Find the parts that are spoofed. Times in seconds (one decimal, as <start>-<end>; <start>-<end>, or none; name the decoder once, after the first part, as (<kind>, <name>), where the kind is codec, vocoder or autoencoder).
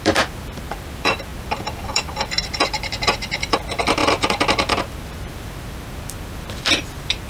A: 0.0-4.0 (vocoder, BigVGAN v2); 4.8-7.3